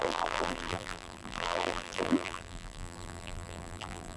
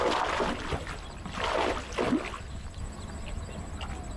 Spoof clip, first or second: first